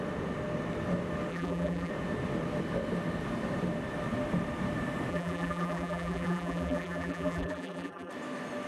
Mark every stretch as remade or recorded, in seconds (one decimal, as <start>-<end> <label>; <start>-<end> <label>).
0.0-1.3 recorded; 1.3-1.9 remade; 1.9-5.1 recorded; 5.1-8.1 remade; 8.1-8.7 recorded